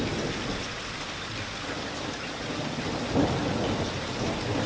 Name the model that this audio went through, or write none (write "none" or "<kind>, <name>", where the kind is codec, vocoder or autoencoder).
none